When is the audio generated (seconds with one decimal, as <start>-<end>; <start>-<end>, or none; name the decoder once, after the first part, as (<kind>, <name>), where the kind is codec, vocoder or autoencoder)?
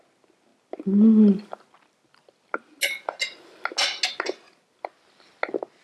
none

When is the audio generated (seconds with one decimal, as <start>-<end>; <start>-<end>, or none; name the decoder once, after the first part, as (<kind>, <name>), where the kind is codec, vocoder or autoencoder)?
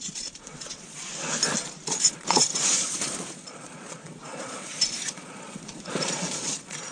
0.0-1.1 (vocoder, Vocos); 1.9-6.9